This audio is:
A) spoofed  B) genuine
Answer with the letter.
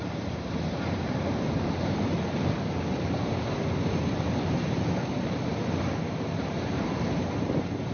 A